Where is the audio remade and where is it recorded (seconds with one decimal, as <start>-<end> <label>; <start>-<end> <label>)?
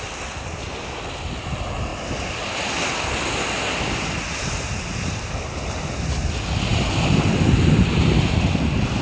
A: 0.0-9.0 recorded